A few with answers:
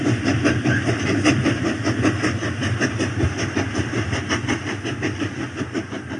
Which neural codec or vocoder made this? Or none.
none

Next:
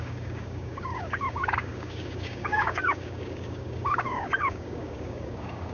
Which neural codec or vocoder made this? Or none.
codec, DAC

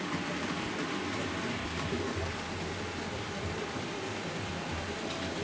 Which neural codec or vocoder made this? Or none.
vocoder, BigVGAN v2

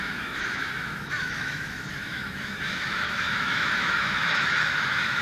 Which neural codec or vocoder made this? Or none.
autoencoder, DAC-VAE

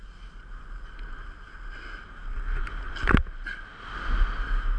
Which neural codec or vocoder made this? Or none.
none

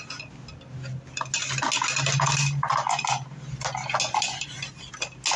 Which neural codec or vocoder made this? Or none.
none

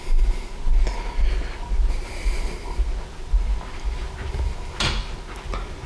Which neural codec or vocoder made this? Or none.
none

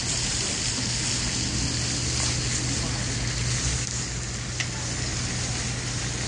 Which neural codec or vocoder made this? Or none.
none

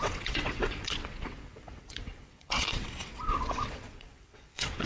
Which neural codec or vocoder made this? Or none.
vocoder, WaveNeXt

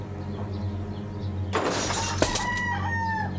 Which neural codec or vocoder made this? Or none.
none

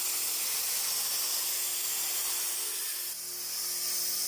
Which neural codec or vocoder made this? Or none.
none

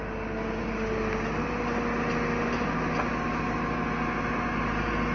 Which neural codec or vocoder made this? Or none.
none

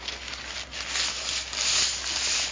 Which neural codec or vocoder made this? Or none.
none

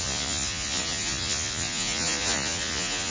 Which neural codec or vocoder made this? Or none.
vocoder, Vocos